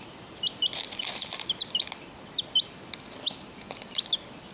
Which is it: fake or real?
real